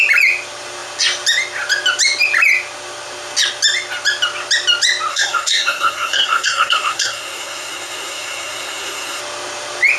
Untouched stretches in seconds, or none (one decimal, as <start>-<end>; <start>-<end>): 0.0-5.1; 9.2-10.0